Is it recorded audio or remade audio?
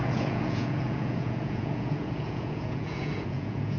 remade